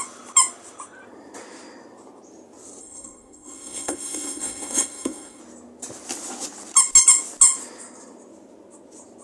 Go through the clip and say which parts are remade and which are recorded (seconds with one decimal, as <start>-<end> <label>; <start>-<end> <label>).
0.0-2.8 recorded; 2.8-5.4 remade; 5.4-9.2 recorded